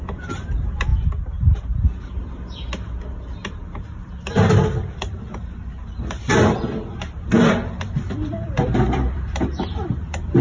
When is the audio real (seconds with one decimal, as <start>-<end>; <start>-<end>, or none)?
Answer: 0.9-5.0; 6.3-7.5